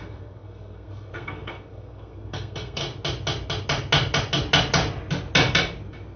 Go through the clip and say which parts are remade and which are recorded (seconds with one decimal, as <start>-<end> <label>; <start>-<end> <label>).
0.0-2.8 remade; 2.8-6.2 recorded